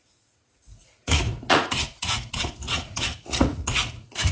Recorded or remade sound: remade